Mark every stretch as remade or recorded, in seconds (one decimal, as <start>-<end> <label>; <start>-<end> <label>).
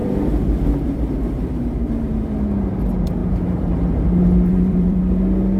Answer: 0.0-1.9 remade; 1.9-3.2 recorded; 3.2-3.9 remade; 3.9-4.5 recorded; 4.5-5.0 remade; 5.0-5.6 recorded